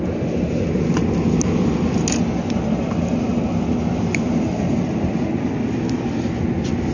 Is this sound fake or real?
real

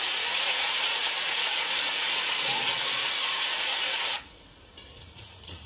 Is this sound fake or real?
fake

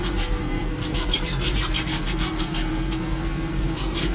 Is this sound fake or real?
fake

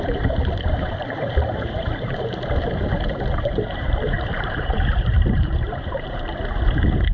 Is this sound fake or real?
fake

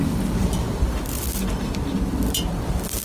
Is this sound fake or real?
real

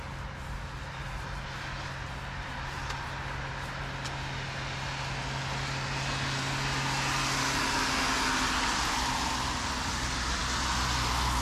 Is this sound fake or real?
real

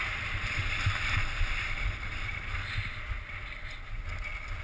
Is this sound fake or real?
real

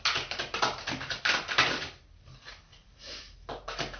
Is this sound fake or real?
real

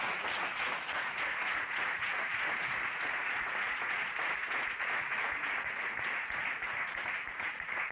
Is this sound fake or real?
fake